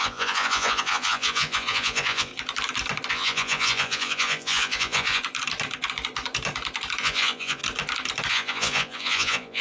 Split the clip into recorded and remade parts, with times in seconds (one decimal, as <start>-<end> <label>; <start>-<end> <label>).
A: 0.0-2.3 remade; 2.3-3.1 recorded; 3.1-5.2 remade; 5.2-7.0 recorded; 7.0-7.6 remade; 7.6-8.3 recorded; 8.3-9.6 remade